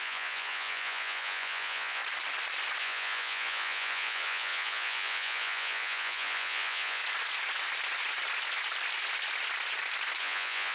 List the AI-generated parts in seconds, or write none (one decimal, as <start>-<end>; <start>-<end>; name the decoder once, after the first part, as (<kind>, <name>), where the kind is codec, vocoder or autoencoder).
0.0-2.0 (vocoder, Vocos); 2.8-7.0; 10.2-10.7